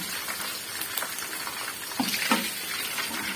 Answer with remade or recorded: recorded